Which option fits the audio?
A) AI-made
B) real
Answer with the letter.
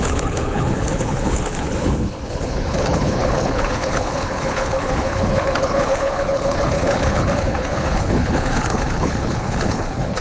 A